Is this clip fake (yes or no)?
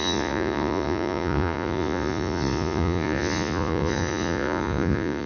yes